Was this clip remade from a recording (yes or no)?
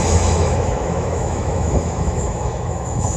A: yes